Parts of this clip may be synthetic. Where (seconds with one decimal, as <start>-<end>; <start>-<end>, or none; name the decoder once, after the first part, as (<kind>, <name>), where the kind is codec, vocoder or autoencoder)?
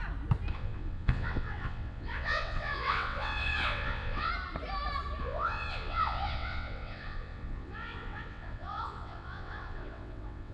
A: 0.5-4.3 (vocoder, WaveNeXt); 5.2-10.5